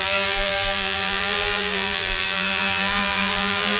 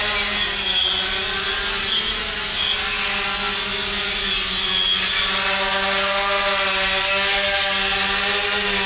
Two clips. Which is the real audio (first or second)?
second